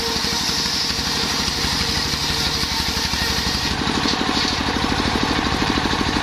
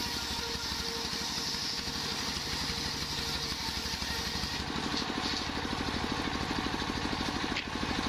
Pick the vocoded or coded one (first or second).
first